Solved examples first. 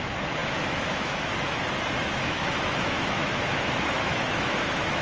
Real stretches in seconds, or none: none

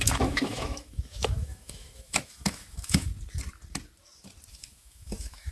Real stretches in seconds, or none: 3.1-4.5

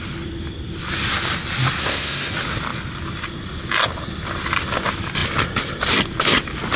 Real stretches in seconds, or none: 0.0-1.8; 2.3-6.8

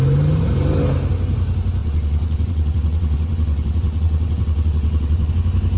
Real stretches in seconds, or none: 0.0-1.8; 5.3-5.8

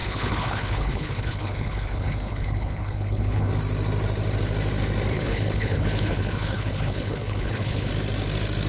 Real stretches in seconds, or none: 3.5-5.1; 7.9-8.7

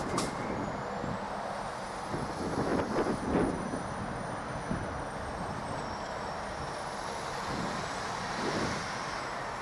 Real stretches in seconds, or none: 0.0-9.6

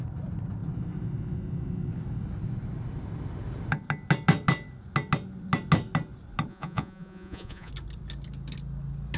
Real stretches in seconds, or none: 0.0-6.5; 7.7-9.2